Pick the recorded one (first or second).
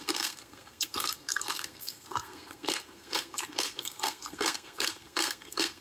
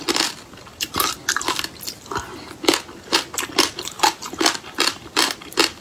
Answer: second